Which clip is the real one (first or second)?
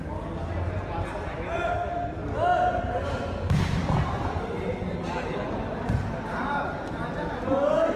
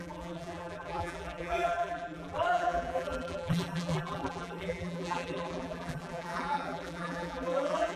first